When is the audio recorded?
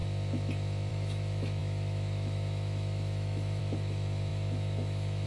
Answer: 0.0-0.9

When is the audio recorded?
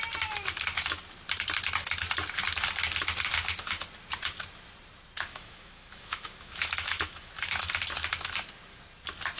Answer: 0.0-5.3; 7.7-9.4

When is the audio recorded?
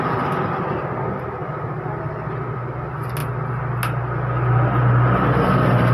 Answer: 0.0-5.9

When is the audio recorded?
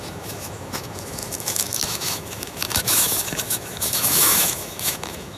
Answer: none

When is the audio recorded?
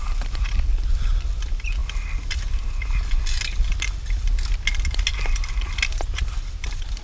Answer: 0.0-7.0